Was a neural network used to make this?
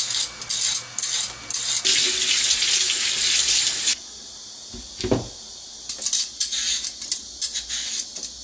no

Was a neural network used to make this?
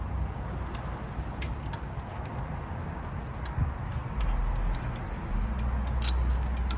no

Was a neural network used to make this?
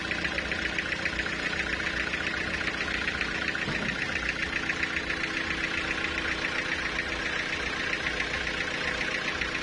no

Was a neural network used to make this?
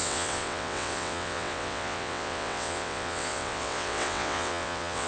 yes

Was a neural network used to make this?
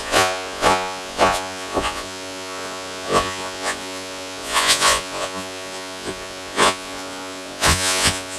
yes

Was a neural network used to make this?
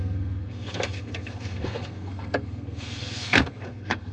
yes